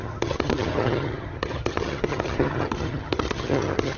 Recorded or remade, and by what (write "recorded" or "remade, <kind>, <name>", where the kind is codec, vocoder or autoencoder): remade, vocoder, HiFi-GAN